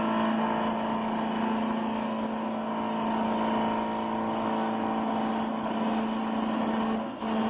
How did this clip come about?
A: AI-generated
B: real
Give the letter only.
B